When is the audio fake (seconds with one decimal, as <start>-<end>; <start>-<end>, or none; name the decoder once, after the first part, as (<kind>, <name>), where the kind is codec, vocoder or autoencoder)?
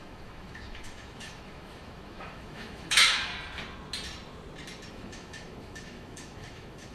0.0-3.3 (autoencoder, DAC-VAE); 4.9-6.9